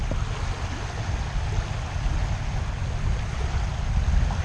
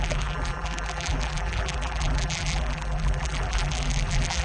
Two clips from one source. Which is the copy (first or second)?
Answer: second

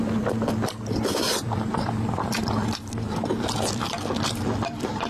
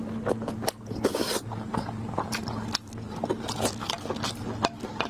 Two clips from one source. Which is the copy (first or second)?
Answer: first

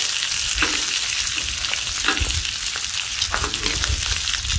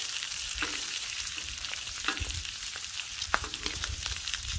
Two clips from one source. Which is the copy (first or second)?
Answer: second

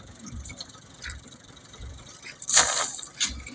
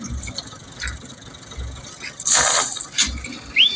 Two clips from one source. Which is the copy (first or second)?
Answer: first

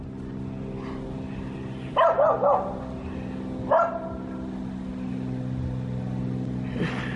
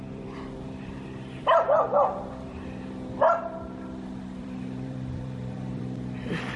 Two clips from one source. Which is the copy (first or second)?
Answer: second